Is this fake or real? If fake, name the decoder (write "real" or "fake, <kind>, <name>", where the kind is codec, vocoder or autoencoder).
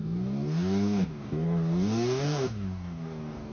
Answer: fake, codec, DAC